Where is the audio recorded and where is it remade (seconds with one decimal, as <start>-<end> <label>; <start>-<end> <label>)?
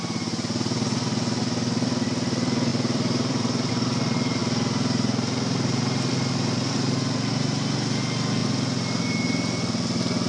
0.0-2.7 recorded; 2.7-3.7 remade; 3.7-10.3 recorded